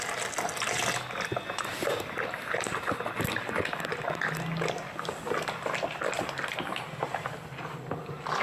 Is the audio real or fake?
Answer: fake